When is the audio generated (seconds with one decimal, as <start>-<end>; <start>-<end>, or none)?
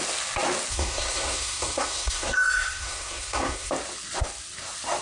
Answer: 0.7-3.7